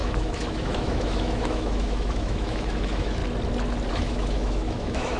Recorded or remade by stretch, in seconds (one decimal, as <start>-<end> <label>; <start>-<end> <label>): 0.0-3.2 remade; 3.2-3.9 recorded; 3.9-5.2 remade